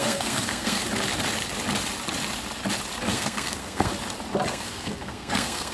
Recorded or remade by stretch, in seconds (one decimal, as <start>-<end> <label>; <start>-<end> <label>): 0.0-0.8 remade; 0.8-3.1 recorded; 3.1-3.9 remade; 3.9-4.5 recorded; 4.5-5.7 remade